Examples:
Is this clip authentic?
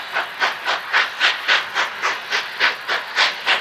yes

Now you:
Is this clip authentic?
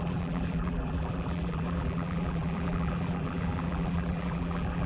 no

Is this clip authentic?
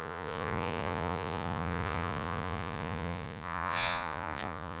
no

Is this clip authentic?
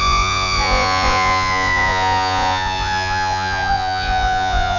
no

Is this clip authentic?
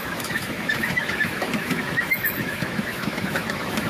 no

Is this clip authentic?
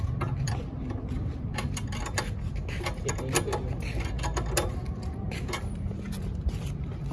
yes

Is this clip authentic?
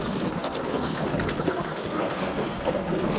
no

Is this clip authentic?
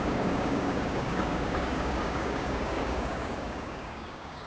no